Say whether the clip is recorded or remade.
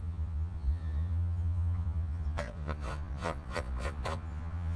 remade